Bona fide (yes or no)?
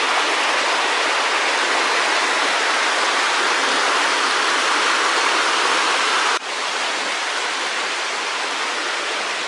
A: yes